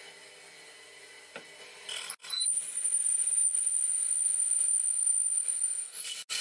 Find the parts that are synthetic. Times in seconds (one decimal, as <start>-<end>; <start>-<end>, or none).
2.2-2.7

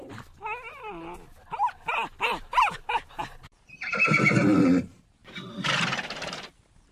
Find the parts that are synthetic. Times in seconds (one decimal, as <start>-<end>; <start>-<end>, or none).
2.3-3.9; 5.2-6.5

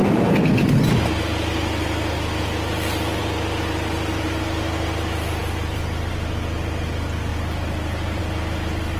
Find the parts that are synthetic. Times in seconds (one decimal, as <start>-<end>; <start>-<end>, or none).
0.0-0.7; 3.2-4.4; 5.4-6.1; 7.3-8.2

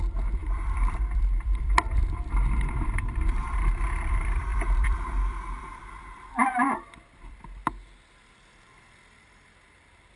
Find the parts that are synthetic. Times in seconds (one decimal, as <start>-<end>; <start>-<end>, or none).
0.0-7.6; 8.3-10.2

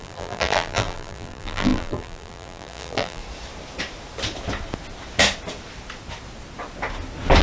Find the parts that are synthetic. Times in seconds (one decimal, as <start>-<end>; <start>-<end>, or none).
0.0-3.2

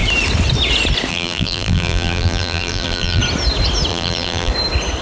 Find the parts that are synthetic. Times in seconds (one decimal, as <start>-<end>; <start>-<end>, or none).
1.1-3.2; 3.9-4.5

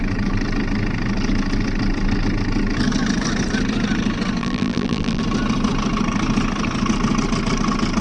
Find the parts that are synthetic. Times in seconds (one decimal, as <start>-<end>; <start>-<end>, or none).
4.4-5.2

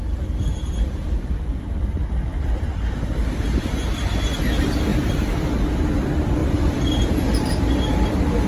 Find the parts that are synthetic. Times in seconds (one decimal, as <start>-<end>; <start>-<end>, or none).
0.5-3.6; 6.4-8.5